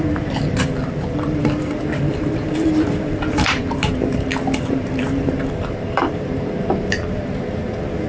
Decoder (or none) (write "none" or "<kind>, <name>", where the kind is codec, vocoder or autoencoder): vocoder, BigVGAN v2